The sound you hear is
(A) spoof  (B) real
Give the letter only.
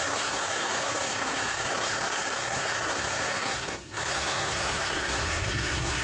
A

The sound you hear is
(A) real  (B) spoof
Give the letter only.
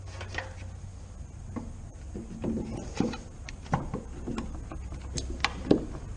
A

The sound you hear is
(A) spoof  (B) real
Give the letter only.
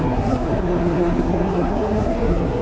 A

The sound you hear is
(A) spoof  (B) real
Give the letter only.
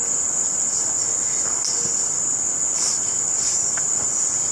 B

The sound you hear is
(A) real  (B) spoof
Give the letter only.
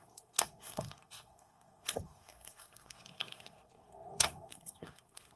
B